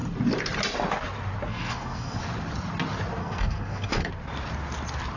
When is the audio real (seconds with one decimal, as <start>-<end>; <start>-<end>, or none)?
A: 0.0-1.5; 2.2-3.2; 4.1-5.2

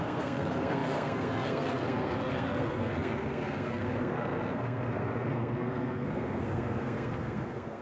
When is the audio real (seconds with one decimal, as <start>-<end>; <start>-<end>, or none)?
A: none